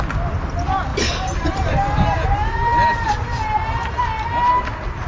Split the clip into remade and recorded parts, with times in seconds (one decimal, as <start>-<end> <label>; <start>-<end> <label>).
0.0-0.9 recorded; 0.9-4.0 remade; 4.0-5.1 recorded